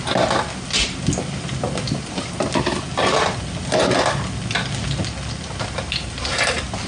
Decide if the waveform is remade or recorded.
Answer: recorded